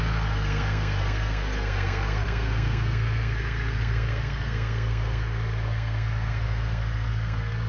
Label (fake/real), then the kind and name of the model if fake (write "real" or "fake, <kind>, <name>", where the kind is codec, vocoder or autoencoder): fake, codec, SNAC